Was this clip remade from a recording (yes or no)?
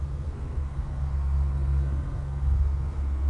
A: yes